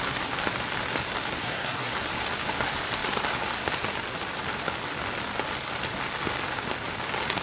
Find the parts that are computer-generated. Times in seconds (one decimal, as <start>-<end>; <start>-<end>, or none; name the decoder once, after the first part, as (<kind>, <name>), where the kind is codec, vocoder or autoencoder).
1.4-1.9 (codec, SNAC)